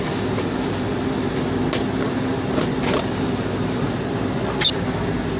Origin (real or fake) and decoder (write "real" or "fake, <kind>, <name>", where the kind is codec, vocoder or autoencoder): real